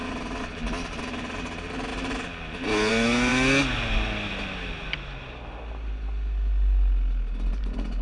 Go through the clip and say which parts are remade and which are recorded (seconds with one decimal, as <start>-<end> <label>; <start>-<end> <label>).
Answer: 0.0-8.0 recorded